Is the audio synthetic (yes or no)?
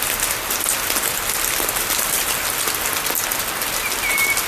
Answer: no